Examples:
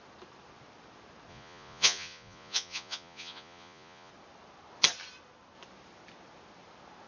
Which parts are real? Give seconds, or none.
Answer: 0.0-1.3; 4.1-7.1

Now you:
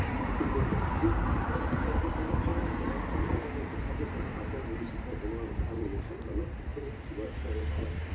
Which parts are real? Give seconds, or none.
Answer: 2.5-3.2; 6.7-8.1

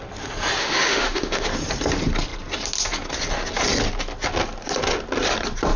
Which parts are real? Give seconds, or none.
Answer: 0.0-0.6; 1.5-5.8

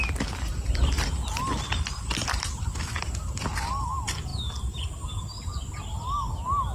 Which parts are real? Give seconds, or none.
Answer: 0.0-6.7

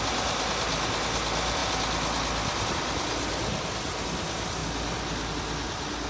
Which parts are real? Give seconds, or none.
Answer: 0.0-6.1

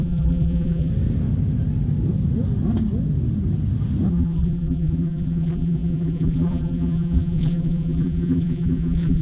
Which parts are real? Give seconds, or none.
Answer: 0.9-4.1

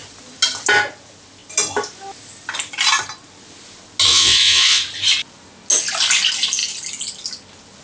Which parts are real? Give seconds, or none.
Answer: 0.0-4.1; 4.8-7.8